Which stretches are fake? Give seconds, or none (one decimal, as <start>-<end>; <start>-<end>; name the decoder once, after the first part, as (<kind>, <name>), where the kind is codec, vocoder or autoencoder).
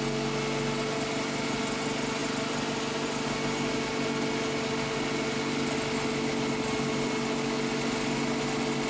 none